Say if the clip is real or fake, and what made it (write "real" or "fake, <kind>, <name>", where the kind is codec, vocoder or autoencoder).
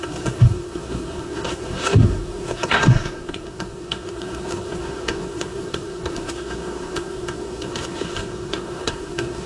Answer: fake, codec, SNAC